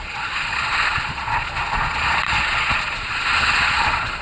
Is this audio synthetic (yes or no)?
yes